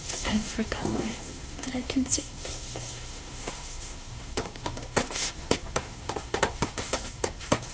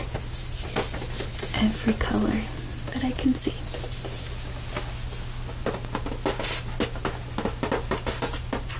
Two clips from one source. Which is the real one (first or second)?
second